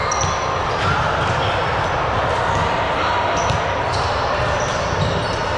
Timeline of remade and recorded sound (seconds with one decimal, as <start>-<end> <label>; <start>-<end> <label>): 0.0-5.6 recorded